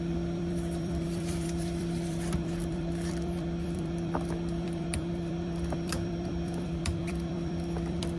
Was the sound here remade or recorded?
remade